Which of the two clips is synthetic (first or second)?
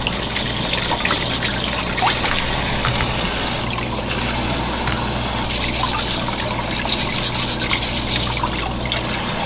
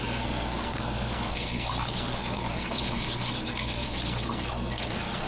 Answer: second